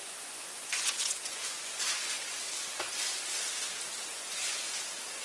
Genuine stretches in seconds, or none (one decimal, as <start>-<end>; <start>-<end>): 2.4-4.1; 4.8-5.2